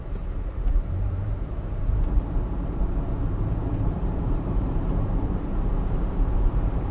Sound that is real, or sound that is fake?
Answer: fake